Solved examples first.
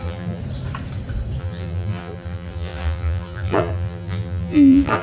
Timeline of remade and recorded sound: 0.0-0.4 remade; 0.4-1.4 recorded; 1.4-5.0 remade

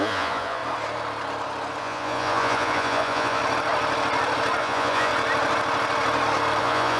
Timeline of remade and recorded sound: 0.0-0.6 remade; 0.6-1.8 recorded; 1.8-3.4 remade; 3.4-4.6 recorded; 4.6-5.1 remade; 5.1-6.6 recorded; 6.6-7.0 remade

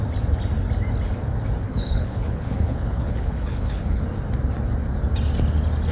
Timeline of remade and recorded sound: 0.0-1.6 recorded; 1.6-4.0 remade; 4.0-5.9 recorded

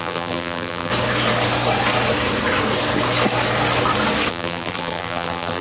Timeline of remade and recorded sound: 0.0-0.9 remade; 0.9-4.3 recorded; 4.3-5.6 remade